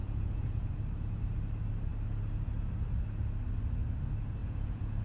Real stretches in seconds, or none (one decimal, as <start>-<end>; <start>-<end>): 0.7-4.4